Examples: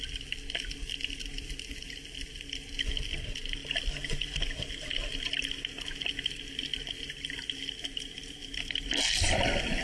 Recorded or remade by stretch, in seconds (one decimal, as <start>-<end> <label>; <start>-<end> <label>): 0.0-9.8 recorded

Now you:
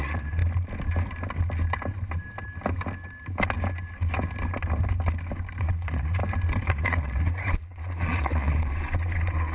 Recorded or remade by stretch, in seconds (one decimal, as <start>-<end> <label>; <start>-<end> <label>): 0.0-0.4 remade; 0.4-5.6 recorded; 5.6-6.2 remade; 6.2-6.7 recorded; 6.7-9.5 remade

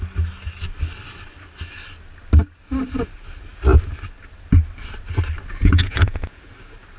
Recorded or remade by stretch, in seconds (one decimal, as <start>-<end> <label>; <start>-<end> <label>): 0.0-5.6 recorded; 5.6-6.5 remade; 6.5-7.0 recorded

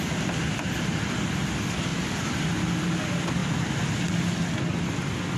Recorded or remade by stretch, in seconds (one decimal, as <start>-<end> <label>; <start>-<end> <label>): 0.0-5.4 recorded